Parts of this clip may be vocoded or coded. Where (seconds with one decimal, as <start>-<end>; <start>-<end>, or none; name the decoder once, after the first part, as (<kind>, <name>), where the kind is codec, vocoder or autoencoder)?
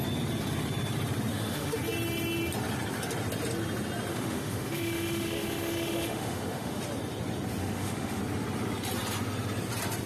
1.3-1.8 (autoencoder, DAC-VAE); 4.1-6.8; 7.6-8.2